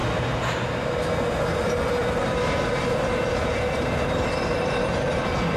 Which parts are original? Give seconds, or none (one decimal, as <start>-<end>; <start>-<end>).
0.0-1.6